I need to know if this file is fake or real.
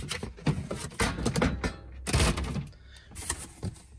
real